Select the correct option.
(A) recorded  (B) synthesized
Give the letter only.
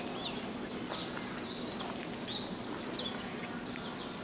A